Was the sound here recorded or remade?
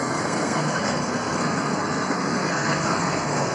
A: remade